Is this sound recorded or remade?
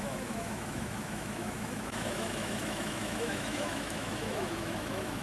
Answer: remade